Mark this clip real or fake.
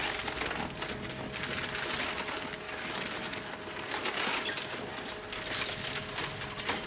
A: real